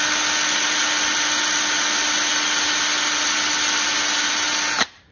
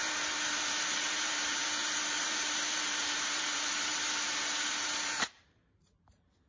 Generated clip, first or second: second